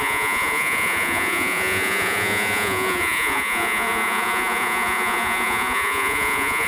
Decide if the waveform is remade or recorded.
remade